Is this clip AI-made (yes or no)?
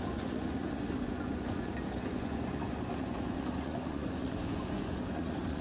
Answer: yes